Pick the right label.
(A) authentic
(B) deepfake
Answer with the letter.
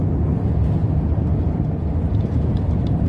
A